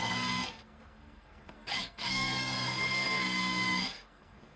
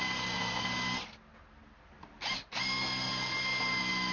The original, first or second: second